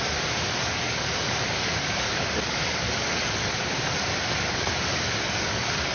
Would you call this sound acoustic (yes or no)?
no